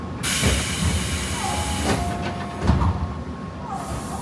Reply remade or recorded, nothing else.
recorded